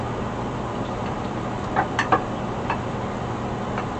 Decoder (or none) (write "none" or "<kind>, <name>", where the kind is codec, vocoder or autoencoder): none